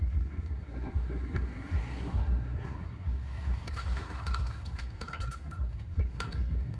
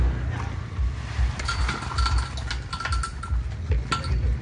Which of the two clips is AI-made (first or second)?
first